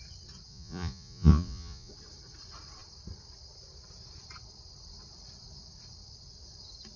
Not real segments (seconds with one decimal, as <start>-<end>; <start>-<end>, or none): 0.5-1.9